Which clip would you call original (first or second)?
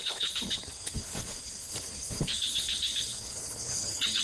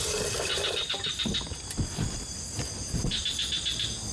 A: second